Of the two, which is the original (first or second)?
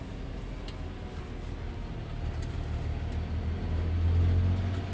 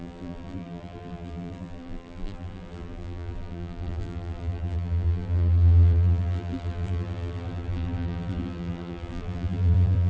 first